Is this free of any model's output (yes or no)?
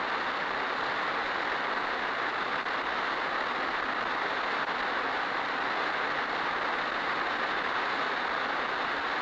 yes